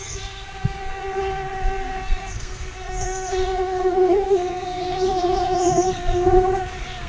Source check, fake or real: fake